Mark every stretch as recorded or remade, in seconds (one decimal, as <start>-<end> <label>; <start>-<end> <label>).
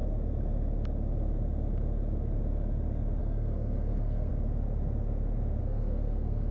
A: 0.0-3.2 recorded; 3.2-4.3 remade; 4.3-5.6 recorded; 5.6-6.5 remade